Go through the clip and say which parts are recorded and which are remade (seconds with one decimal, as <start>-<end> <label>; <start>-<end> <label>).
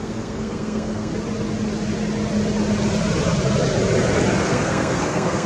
0.0-1.1 remade; 1.1-4.4 recorded; 4.4-5.5 remade